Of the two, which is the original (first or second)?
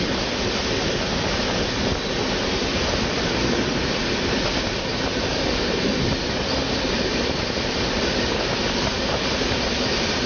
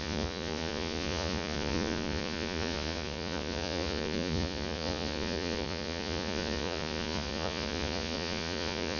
first